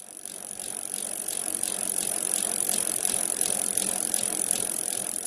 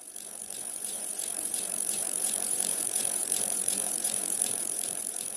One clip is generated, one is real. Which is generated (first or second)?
second